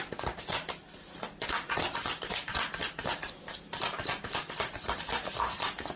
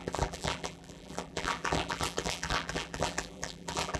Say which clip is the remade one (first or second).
second